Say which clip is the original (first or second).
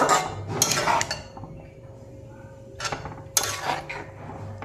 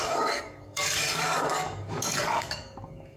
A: first